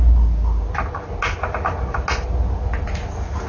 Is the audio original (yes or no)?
yes